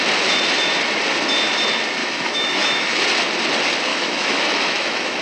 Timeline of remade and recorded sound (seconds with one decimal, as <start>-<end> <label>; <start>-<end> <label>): 0.0-2.0 recorded; 2.0-3.0 remade; 3.0-3.9 recorded; 3.9-5.2 remade